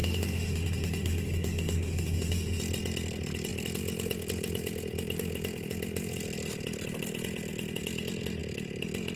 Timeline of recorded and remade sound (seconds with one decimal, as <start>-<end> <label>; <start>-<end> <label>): 0.0-2.6 remade; 2.6-9.2 recorded